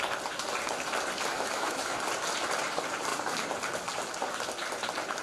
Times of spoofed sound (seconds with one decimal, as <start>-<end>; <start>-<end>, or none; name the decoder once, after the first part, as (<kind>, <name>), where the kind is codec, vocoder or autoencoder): 1.3-2.0 (autoencoder, DAC-VAE)